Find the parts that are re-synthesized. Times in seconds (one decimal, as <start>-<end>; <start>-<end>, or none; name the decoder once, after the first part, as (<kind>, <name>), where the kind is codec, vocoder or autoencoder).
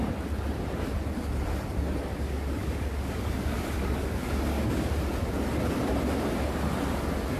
2.1-4.9 (codec, DAC)